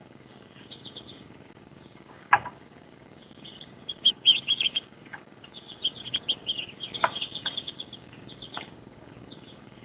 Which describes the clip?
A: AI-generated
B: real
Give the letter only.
A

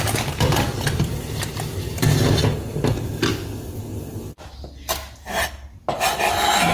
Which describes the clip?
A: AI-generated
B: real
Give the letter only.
B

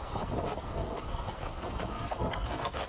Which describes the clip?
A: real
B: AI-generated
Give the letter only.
B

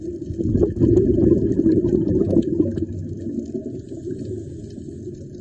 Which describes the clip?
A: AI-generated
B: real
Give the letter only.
B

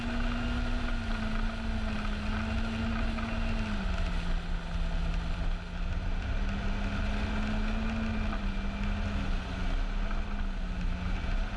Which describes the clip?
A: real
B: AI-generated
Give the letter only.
A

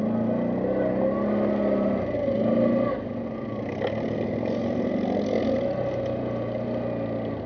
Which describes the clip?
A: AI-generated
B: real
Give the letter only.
B